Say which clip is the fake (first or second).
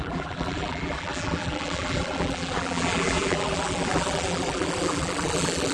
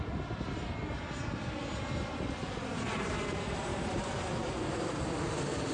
first